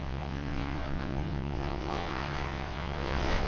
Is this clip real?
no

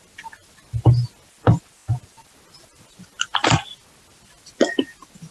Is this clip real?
yes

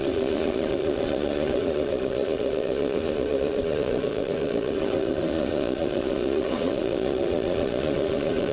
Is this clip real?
no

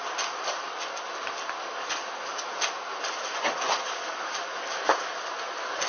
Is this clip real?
yes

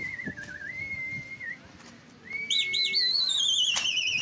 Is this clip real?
yes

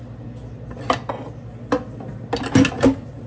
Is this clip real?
yes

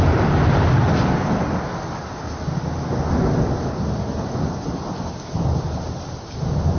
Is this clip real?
yes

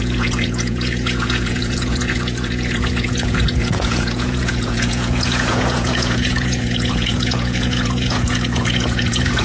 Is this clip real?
no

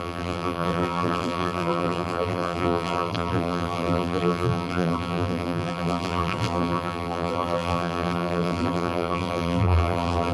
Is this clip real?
no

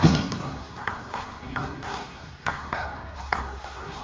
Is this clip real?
no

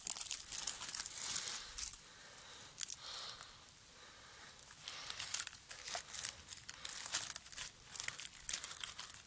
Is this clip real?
yes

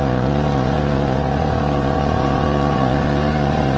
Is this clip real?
no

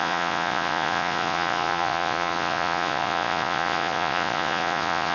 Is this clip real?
no